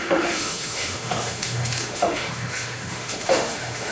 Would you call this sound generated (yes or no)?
yes